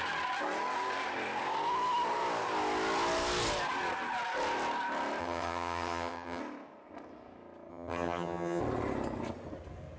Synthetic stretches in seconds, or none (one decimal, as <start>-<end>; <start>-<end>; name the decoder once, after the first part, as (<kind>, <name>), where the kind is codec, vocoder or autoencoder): 5.2-6.4 (vocoder, HiFi-GAN); 7.7-8.6